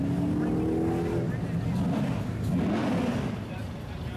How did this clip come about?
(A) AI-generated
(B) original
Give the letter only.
B